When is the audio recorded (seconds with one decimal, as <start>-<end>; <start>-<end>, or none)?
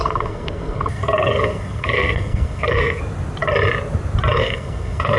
3.0-4.4